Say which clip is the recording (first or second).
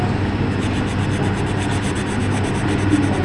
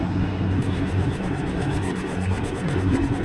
first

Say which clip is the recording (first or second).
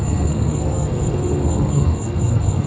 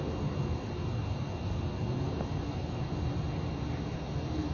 second